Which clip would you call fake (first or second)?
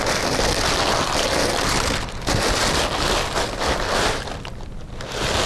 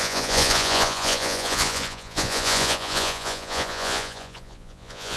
second